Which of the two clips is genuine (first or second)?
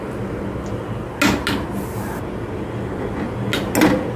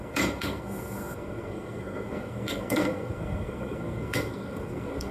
first